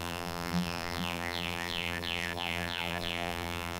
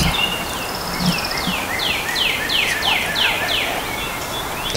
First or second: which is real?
second